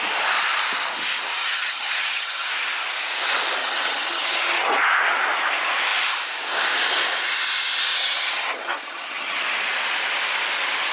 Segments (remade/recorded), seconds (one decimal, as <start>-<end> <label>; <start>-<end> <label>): 0.0-1.4 recorded; 1.4-2.5 remade; 2.5-3.6 recorded; 3.6-4.8 remade; 4.8-8.0 recorded; 8.0-9.4 remade; 9.4-10.9 recorded